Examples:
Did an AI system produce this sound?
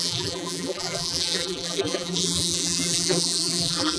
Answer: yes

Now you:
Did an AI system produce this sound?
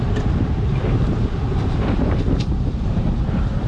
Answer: yes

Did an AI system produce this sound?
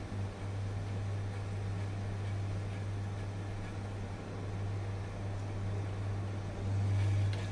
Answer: no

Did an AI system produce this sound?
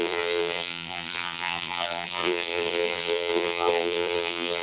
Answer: yes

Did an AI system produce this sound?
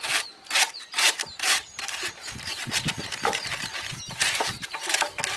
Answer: yes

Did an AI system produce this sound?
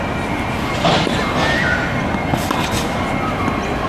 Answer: no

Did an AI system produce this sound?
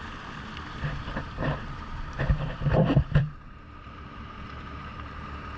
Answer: yes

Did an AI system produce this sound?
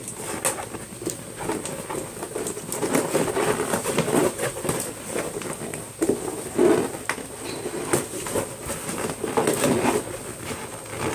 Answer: no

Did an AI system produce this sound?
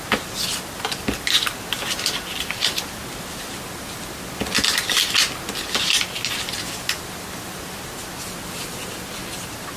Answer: no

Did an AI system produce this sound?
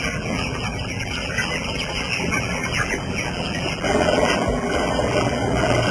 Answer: yes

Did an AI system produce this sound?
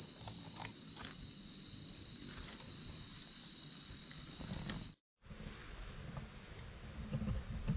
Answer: yes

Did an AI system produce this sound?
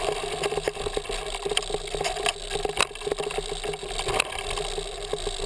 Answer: no